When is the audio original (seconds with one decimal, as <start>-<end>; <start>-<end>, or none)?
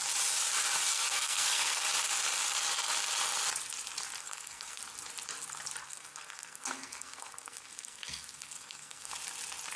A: 0.0-0.9; 1.8-4.2; 4.8-5.8; 9.1-9.8